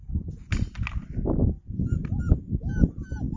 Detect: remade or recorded recorded